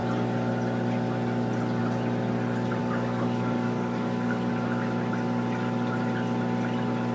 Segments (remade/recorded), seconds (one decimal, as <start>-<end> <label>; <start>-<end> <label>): 0.0-2.8 recorded; 2.8-4.5 remade; 4.5-7.1 recorded